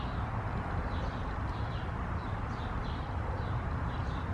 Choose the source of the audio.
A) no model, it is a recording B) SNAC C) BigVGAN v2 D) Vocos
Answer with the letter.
A